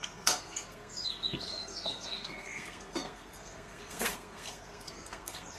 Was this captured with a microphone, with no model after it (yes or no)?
no